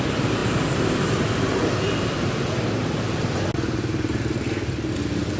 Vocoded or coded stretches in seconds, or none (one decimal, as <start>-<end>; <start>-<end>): none